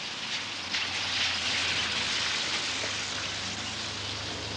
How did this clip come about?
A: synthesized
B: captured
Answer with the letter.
B